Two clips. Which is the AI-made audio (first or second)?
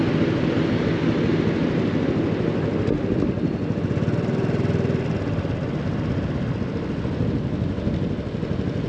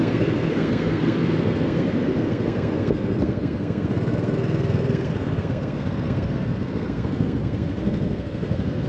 second